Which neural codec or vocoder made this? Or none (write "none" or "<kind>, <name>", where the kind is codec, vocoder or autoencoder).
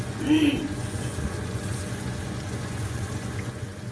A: vocoder, Vocos